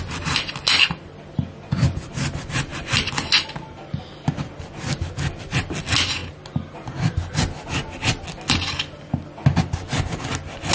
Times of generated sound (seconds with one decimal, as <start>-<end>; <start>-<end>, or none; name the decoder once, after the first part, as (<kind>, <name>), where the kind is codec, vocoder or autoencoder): none